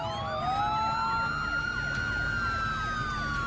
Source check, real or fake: real